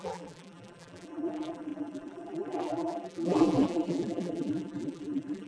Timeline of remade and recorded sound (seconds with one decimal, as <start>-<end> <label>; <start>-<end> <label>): 0.0-5.5 remade